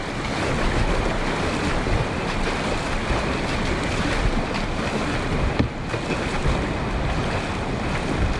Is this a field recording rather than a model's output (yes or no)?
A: yes